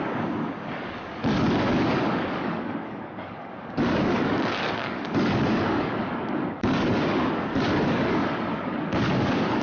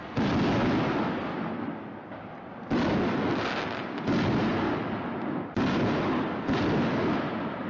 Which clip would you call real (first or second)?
second